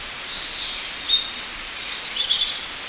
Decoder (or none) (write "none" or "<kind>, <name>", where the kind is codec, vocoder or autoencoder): none